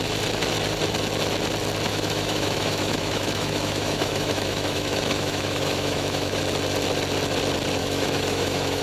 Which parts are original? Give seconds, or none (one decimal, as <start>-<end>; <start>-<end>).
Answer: 0.0-1.9; 6.4-7.8